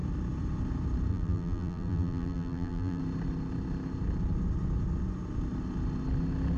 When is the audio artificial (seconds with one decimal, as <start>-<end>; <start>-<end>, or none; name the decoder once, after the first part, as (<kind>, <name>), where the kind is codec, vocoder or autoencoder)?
1.1-3.0 (vocoder, BigVGAN v2)